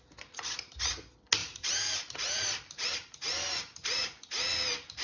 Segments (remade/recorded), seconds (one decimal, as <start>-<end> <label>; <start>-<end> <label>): 0.0-1.4 recorded; 1.4-4.4 remade; 4.4-5.0 recorded